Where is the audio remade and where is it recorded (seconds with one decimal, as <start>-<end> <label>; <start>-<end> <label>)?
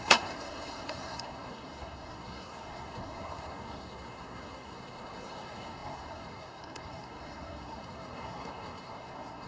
0.0-9.5 remade